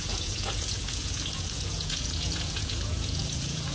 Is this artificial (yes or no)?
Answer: yes